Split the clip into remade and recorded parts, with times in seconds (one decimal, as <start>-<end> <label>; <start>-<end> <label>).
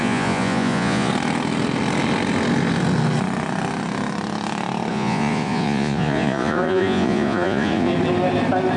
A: 0.0-1.1 remade; 1.1-4.9 recorded; 4.9-7.9 remade; 7.9-8.8 recorded